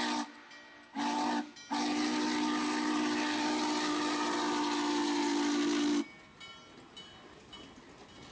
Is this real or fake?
real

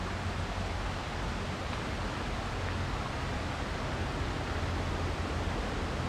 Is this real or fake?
real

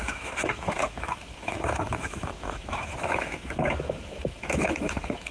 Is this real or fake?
fake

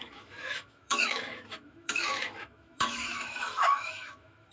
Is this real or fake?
fake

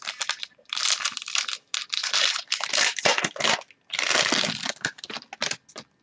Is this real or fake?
real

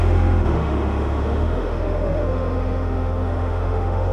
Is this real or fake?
fake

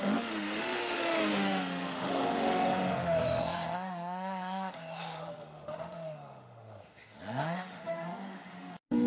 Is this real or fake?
fake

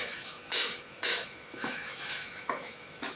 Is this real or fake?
fake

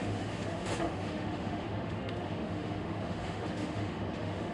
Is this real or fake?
fake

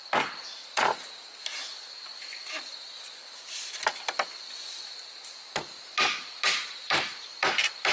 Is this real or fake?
real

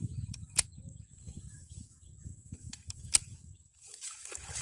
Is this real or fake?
fake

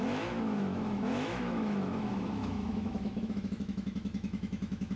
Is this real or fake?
fake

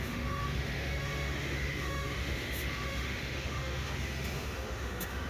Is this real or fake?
fake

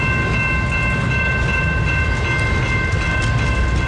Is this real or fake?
real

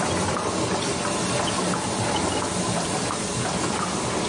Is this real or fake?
real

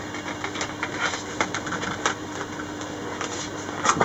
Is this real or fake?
real